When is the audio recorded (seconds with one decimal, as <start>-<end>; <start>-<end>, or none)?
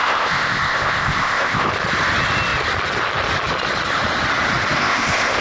1.7-4.8